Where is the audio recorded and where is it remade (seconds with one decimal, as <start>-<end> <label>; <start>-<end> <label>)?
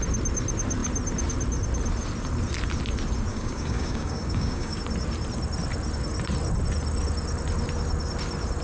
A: 0.0-3.3 recorded; 3.3-4.8 remade; 4.8-8.6 recorded